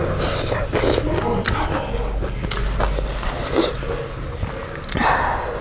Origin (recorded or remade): recorded